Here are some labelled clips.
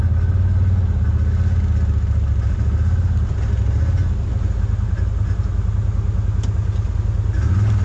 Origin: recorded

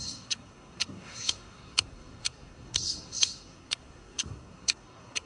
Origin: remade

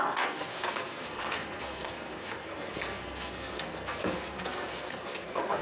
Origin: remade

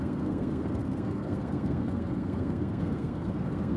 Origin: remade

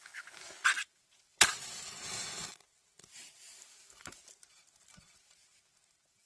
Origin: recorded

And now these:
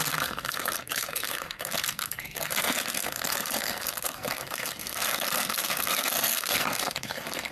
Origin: remade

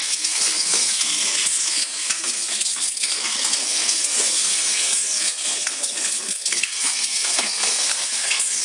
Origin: remade